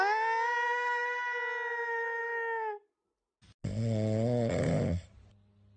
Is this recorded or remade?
recorded